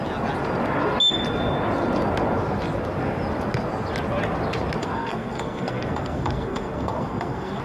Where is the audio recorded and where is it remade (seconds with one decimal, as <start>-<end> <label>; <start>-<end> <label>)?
0.0-4.8 recorded; 4.8-7.6 remade